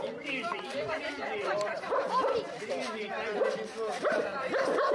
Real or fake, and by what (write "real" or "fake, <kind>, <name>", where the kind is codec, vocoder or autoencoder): fake, vocoder, BigVGAN v2